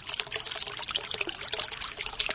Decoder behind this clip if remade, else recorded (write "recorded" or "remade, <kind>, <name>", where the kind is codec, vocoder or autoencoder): recorded